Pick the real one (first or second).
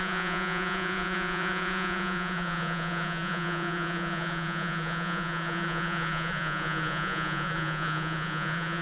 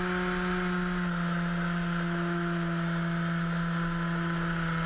second